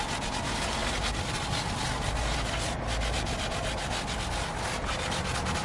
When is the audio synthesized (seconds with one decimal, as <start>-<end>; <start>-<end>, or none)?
none